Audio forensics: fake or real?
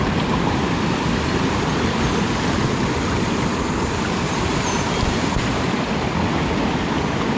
fake